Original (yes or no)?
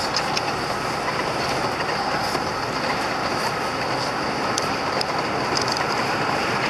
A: yes